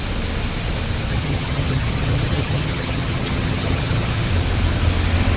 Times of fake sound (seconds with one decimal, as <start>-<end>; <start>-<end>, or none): 1.1-4.3